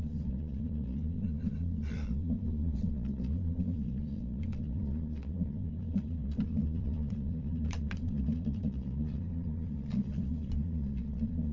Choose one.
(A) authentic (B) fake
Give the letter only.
B